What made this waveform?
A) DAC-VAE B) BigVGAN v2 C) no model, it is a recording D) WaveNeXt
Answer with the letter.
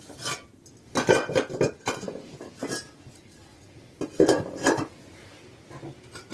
C